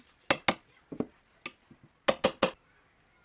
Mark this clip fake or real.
real